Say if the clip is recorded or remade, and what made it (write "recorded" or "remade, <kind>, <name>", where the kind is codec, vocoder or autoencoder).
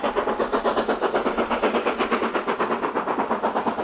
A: recorded